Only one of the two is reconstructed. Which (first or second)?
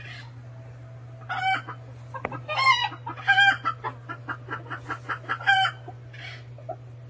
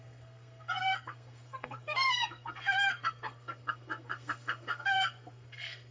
second